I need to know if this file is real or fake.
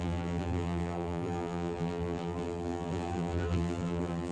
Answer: fake